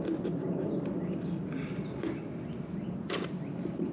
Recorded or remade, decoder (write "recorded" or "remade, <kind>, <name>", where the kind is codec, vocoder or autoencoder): recorded